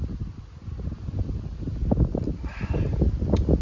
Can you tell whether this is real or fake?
real